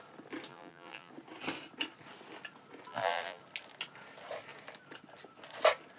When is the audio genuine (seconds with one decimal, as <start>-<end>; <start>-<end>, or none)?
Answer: 0.0-0.5; 1.1-2.9; 3.4-6.0